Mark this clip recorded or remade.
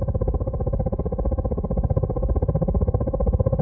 recorded